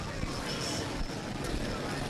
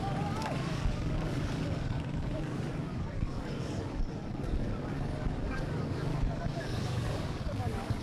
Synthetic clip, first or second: second